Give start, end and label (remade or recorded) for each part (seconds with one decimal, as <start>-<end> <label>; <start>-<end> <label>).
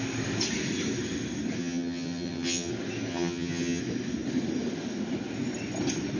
0.0-1.6 recorded; 1.6-2.7 remade; 2.7-3.1 recorded; 3.1-3.8 remade; 3.8-6.2 recorded